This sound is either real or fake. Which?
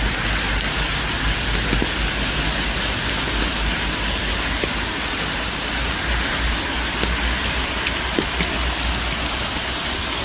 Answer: real